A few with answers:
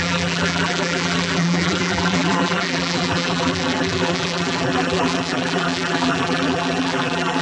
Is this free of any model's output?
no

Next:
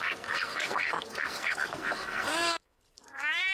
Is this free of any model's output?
no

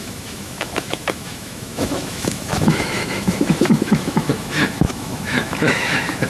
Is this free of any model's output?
no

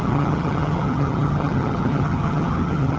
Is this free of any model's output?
no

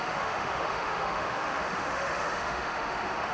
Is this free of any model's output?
no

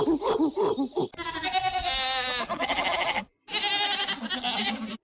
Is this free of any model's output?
yes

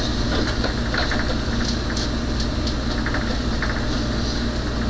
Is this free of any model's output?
yes